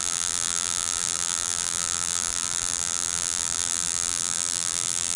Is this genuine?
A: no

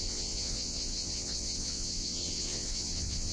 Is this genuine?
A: no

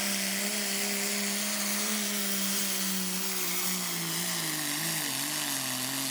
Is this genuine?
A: yes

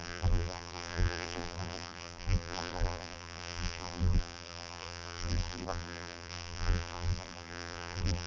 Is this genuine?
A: no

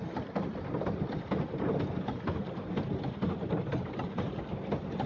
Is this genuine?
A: yes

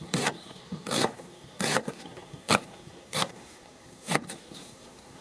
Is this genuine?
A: no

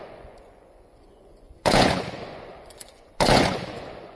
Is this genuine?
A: no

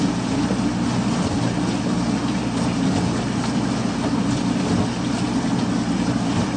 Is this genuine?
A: yes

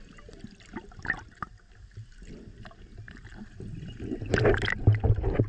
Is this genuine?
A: yes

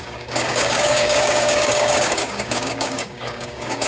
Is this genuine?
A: no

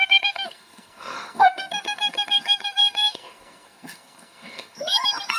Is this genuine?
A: no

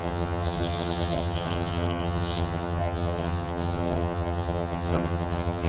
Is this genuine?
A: no